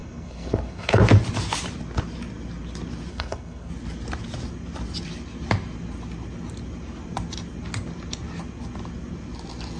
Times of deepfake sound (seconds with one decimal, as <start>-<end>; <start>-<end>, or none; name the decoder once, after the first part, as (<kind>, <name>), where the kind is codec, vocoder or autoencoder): 0.0-1.0 (codec, SNAC); 3.1-3.7